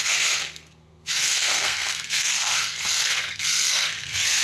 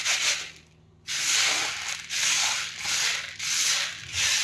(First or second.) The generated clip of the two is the first